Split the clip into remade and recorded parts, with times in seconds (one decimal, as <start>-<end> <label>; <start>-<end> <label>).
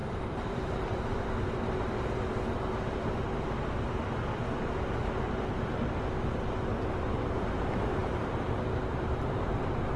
0.0-1.9 remade; 1.9-8.0 recorded; 8.0-8.5 remade; 8.5-10.0 recorded